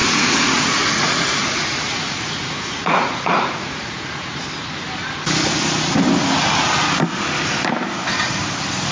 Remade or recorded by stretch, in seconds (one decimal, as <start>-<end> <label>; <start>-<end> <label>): 0.0-4.4 remade; 4.4-8.9 recorded